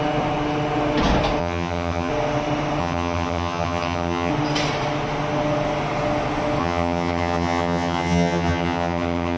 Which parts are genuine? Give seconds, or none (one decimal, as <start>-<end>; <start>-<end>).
0.0-1.4; 2.1-2.8; 4.3-6.6

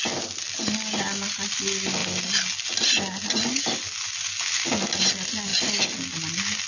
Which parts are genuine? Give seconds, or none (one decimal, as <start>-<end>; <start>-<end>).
0.0-6.7

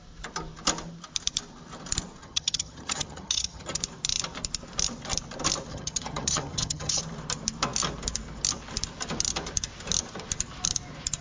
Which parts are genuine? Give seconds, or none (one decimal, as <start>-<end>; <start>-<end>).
0.0-2.2; 3.8-5.7; 7.0-11.2

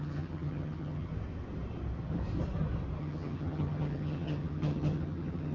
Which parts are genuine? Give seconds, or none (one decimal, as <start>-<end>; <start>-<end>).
1.1-3.0

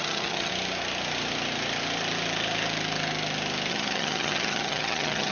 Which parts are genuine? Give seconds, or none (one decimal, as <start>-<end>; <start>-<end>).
0.5-3.7

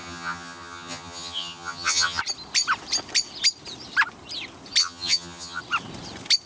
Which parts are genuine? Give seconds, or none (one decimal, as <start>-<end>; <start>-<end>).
2.2-4.8; 5.6-6.5